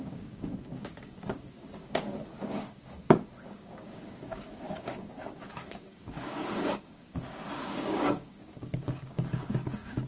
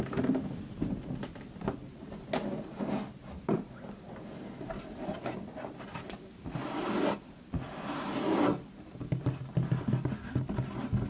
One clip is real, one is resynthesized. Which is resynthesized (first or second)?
first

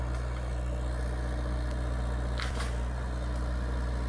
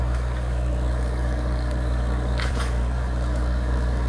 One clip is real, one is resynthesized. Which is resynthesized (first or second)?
second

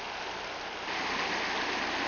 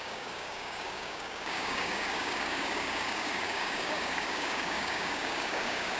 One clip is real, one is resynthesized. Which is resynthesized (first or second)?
second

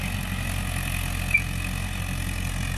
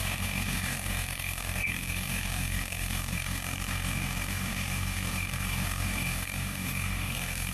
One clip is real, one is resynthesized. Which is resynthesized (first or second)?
second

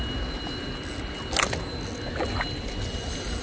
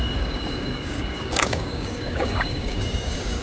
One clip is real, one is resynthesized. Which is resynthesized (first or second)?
second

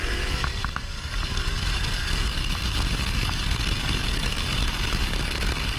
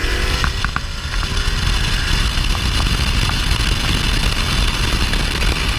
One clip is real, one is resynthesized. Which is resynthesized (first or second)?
first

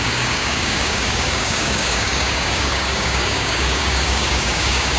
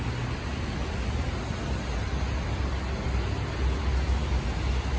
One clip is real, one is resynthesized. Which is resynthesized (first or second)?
first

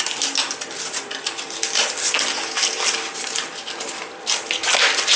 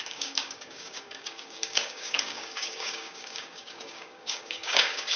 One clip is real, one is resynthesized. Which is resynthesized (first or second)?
second